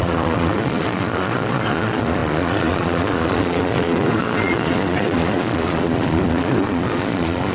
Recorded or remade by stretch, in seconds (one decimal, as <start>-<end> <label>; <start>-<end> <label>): 0.0-7.5 remade